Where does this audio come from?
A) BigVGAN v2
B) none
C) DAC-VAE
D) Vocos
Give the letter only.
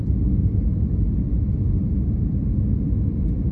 B